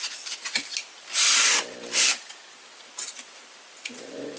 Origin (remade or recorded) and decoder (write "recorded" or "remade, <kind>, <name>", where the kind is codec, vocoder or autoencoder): recorded